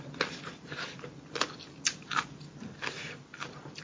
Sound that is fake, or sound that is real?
real